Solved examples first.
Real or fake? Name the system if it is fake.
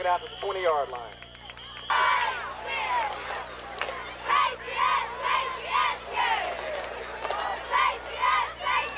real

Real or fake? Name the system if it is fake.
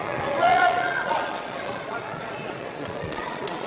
fake, vocoder, Vocos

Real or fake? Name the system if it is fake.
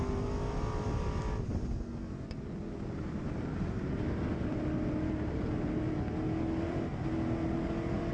real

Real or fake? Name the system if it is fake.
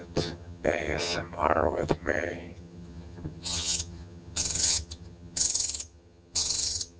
fake, vocoder, HiFi-GAN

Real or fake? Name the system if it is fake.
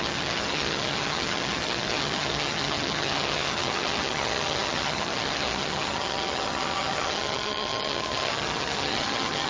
fake, vocoder, HiFi-GAN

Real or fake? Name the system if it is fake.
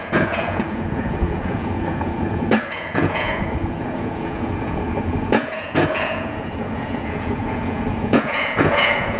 fake, vocoder, Vocos